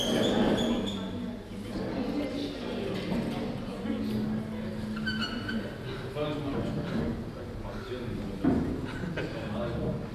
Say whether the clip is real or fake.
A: real